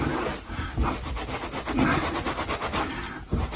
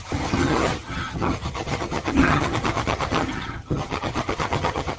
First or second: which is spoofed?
second